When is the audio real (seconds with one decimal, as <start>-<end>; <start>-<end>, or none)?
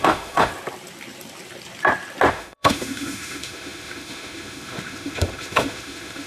0.5-2.3